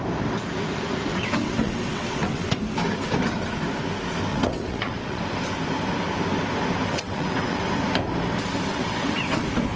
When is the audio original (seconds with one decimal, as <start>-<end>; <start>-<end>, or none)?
0.0-1.1; 2.6-4.3; 5.2-6.9; 7.6-8.7; 9.4-9.8